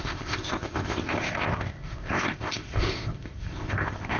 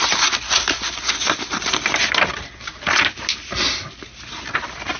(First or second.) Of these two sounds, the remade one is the first